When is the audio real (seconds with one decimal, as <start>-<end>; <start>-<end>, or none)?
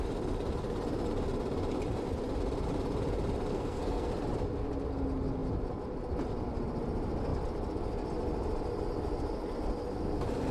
0.0-3.5; 4.1-10.5